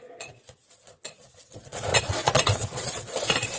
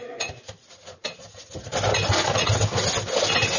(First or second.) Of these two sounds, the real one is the second